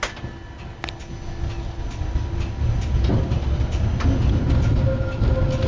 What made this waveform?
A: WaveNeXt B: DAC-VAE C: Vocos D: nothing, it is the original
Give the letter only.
D